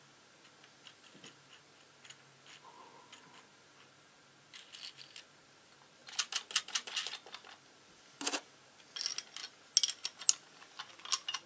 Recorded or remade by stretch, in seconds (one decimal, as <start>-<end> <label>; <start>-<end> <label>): 0.0-11.5 recorded